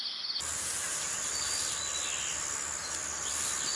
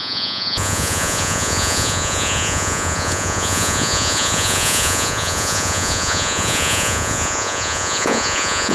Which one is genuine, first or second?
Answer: first